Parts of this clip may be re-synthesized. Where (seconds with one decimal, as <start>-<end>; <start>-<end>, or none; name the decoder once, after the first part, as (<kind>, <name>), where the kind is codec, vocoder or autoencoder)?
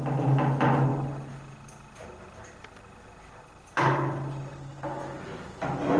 none